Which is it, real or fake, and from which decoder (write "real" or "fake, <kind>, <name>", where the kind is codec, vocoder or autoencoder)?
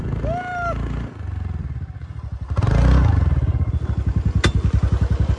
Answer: real